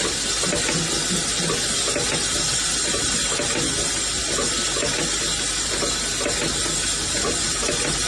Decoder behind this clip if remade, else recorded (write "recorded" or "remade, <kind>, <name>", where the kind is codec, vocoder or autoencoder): recorded